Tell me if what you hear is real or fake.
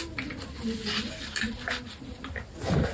real